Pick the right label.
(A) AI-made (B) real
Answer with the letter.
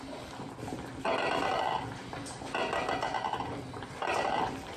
B